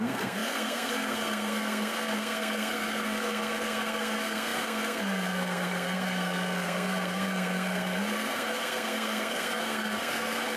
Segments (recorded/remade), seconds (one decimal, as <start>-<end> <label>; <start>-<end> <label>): 0.0-10.6 remade